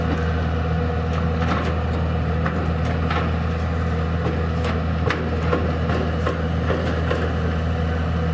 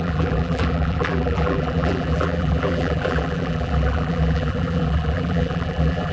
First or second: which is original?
first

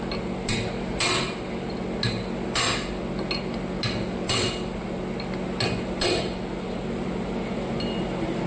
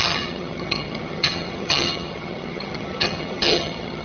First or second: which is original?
first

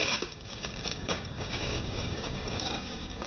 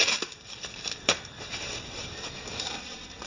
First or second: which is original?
second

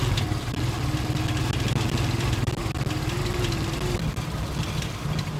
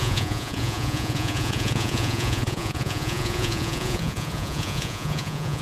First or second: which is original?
first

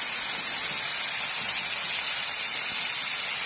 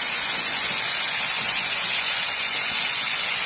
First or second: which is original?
first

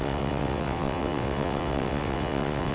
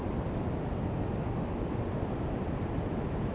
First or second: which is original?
second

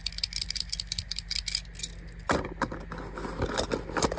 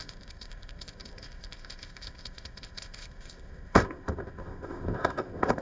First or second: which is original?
first